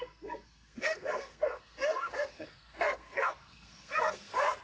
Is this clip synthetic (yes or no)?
yes